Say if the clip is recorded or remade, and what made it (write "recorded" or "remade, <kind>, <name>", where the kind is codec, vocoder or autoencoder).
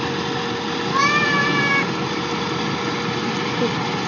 recorded